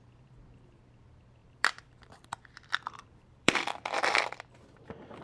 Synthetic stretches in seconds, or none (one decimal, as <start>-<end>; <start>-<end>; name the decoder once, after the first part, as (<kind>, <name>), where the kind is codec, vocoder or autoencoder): 1.4-4.5 (vocoder, BigVGAN v2)